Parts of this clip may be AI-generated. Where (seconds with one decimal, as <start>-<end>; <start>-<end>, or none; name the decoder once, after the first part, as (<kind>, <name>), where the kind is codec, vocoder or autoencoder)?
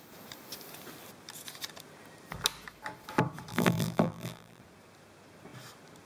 3.5-4.6 (vocoder, BigVGAN v2)